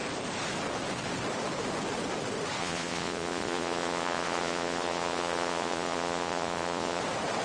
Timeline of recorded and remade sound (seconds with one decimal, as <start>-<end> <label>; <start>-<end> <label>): 0.0-2.6 recorded; 2.6-7.0 remade; 7.0-7.4 recorded